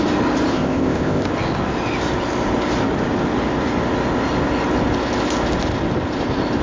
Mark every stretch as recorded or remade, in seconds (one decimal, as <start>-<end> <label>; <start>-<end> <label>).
0.0-0.5 recorded; 0.5-1.3 remade; 1.3-6.6 recorded